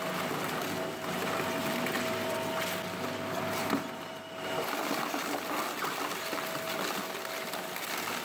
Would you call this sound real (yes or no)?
yes